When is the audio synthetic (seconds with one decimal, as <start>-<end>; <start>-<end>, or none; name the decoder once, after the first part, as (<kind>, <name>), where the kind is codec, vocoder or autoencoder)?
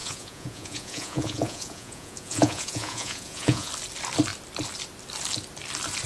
0.0-3.7 (vocoder, Vocos)